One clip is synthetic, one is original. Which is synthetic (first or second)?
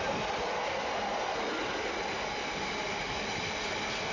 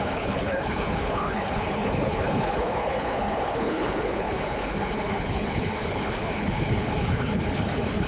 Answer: second